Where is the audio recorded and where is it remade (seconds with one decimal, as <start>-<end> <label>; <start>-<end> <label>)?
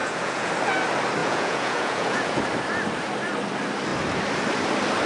0.0-0.5 remade; 0.5-1.2 recorded; 1.2-2.4 remade; 2.4-5.1 recorded